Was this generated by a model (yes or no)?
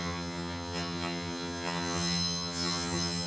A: yes